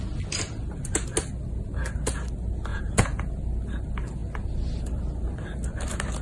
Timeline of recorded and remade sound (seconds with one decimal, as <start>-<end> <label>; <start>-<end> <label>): 0.0-2.7 recorded; 2.7-3.3 remade; 3.3-6.2 recorded